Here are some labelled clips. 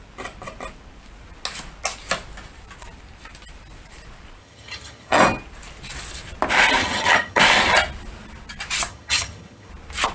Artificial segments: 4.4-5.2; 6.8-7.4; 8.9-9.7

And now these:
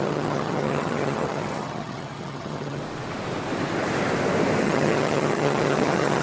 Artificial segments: 0.0-2.8; 4.6-6.2